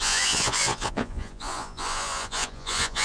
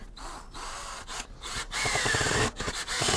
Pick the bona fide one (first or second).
second